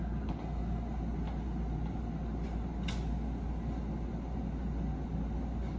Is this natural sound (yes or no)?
yes